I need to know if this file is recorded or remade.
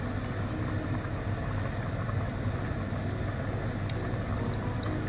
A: recorded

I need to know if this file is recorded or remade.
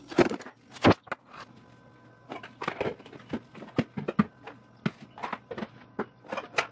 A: recorded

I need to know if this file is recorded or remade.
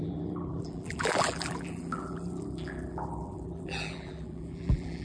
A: remade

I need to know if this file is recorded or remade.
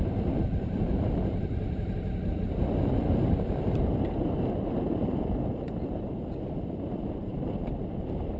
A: remade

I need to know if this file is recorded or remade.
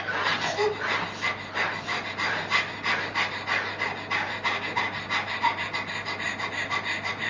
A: recorded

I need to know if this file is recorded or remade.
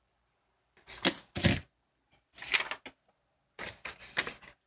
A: recorded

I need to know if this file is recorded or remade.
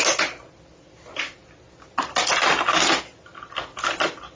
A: recorded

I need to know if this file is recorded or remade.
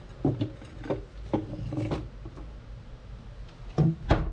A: recorded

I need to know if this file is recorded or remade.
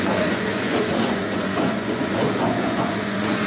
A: remade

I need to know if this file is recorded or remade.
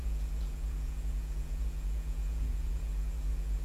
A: remade